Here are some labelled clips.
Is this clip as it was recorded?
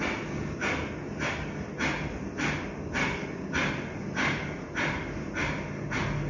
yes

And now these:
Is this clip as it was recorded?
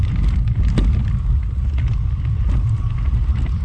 yes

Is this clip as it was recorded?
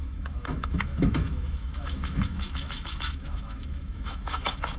no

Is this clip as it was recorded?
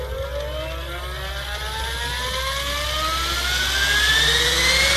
yes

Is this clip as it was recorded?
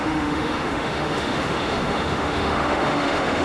no